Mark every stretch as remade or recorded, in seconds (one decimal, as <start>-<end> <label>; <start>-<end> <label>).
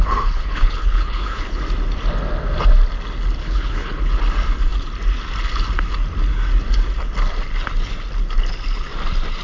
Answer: 0.0-1.6 remade; 1.6-3.4 recorded; 3.4-4.0 remade; 4.0-9.4 recorded